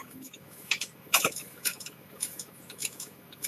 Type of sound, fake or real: fake